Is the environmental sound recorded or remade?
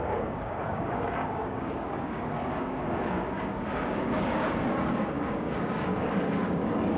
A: remade